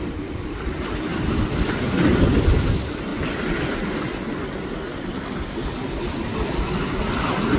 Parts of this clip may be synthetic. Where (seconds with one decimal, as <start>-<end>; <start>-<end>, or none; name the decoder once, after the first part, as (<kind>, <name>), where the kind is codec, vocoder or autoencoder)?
0.0-1.1 (vocoder, BigVGAN v2); 2.1-3.1